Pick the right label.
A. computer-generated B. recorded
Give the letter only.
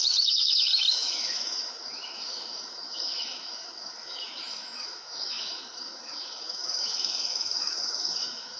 A